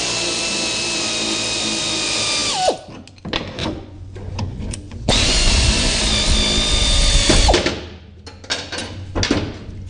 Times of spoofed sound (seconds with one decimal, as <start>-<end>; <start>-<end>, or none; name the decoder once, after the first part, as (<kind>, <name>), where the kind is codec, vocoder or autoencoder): 3.6-6.0 (vocoder, Vocos)